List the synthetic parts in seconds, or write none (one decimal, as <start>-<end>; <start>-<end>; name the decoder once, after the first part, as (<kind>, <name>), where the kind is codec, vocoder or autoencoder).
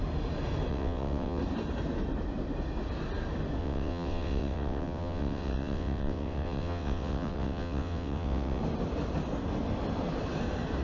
0.7-1.4 (vocoder, WaveNeXt); 3.6-8.6